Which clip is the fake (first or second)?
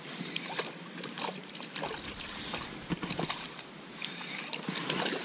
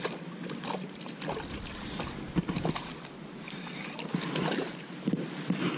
first